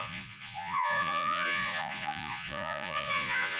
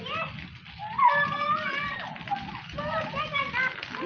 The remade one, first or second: first